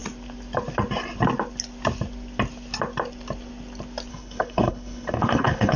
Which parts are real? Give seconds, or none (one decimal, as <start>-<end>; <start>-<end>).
0.0-4.1